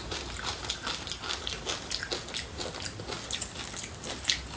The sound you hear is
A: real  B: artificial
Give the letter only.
A